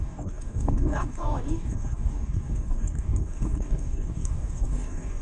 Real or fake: fake